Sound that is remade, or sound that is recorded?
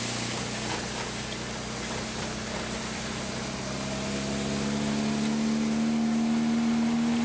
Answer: recorded